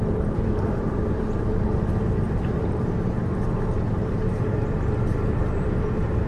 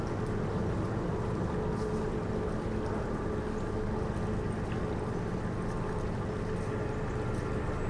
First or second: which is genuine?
second